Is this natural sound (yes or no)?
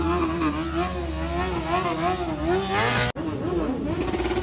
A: yes